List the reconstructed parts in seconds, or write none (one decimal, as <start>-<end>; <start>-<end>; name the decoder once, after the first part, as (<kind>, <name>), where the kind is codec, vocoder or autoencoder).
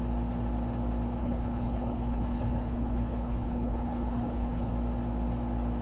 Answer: 1.2-4.7 (codec, HILCodec)